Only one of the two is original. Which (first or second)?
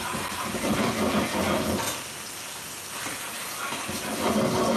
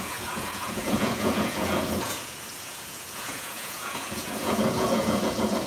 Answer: first